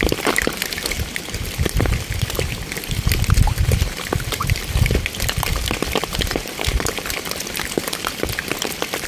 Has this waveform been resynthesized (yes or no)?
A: yes